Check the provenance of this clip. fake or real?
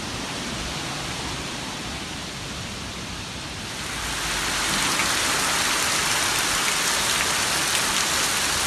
real